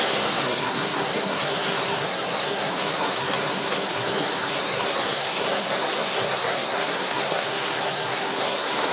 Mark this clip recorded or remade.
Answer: remade